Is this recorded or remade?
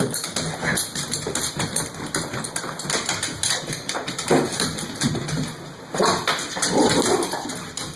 recorded